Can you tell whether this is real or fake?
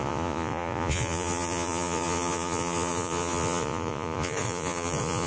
fake